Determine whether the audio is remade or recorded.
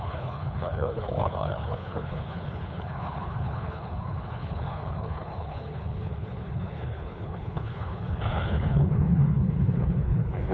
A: remade